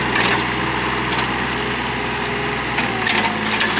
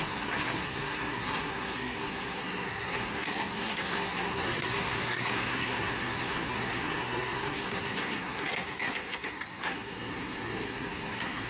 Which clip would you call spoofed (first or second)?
second